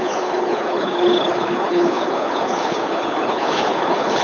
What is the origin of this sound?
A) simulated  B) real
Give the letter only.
A